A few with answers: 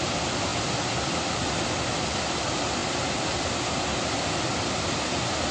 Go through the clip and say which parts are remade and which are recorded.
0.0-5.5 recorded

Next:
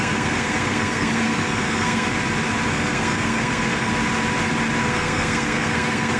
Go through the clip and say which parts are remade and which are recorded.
0.0-2.1 remade; 2.1-2.7 recorded; 2.7-3.9 remade; 3.9-4.8 recorded; 4.8-6.2 remade